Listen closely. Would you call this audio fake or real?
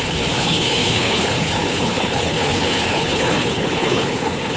fake